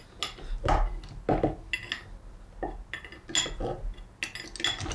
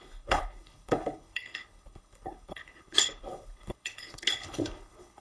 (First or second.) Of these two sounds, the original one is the first